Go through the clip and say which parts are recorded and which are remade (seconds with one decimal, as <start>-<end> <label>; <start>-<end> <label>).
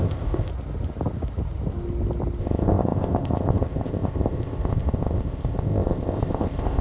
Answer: 0.0-0.5 remade; 0.5-2.4 recorded; 2.4-6.8 remade